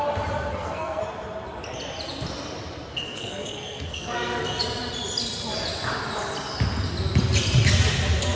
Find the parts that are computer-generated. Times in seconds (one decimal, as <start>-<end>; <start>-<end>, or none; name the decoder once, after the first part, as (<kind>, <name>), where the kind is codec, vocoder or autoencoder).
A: 0.5-1.0 (codec, SNAC); 2.9-4.6